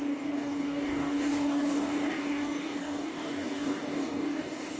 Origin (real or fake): fake